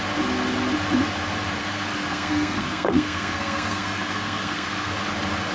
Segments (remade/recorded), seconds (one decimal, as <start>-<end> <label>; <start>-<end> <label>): 0.0-1.6 recorded; 1.6-4.9 remade; 4.9-5.5 recorded